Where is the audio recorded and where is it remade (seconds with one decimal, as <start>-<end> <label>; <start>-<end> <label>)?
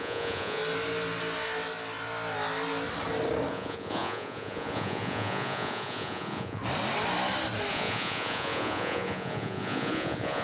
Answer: 0.0-0.6 remade; 0.6-3.5 recorded; 3.5-6.6 remade; 6.6-7.7 recorded; 7.7-10.4 remade